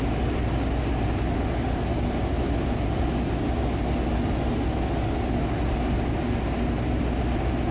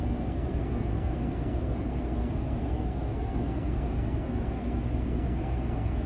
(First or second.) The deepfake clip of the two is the second